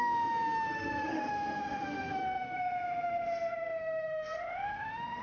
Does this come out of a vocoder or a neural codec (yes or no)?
yes